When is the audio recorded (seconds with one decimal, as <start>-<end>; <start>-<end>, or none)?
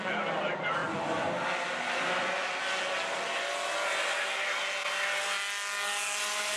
0.0-6.6